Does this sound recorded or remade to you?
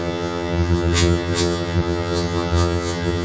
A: remade